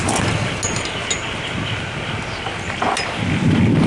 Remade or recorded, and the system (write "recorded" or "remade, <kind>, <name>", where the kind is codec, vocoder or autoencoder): recorded